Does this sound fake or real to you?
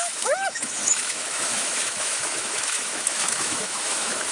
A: fake